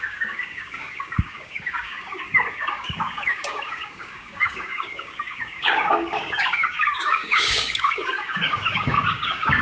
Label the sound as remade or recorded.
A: remade